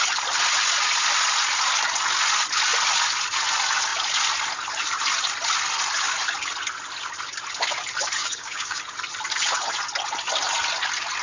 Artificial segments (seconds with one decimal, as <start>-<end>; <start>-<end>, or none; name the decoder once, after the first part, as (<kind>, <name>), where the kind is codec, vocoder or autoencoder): 8.2-8.8 (codec, DAC)

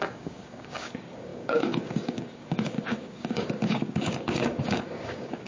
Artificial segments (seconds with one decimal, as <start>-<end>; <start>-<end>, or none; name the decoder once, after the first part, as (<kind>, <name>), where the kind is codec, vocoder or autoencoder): 0.0-5.5 (codec, DAC)

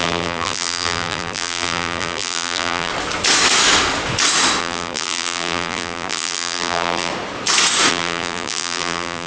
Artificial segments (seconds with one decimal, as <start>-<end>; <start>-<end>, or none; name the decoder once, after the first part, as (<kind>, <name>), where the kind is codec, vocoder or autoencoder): 0.0-2.9 (vocoder, BigVGAN v2); 4.6-7.1; 7.9-9.3

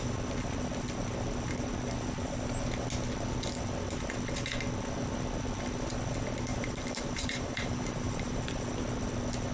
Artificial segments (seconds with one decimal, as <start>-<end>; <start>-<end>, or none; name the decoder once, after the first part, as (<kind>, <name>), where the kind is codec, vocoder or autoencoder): 6.5-8.4 (vocoder, BigVGAN v2)

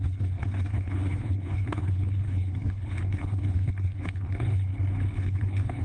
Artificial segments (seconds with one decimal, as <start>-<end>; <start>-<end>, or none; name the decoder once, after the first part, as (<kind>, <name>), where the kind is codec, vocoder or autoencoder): 0.0-4.7 (codec, HILCodec); 5.2-5.8